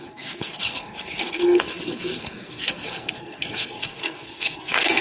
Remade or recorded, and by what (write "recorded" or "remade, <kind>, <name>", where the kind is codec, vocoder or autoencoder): remade, codec, SNAC